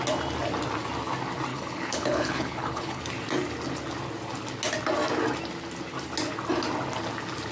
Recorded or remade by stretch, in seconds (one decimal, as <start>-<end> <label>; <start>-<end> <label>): 0.0-1.5 recorded; 1.5-3.0 remade; 3.0-7.5 recorded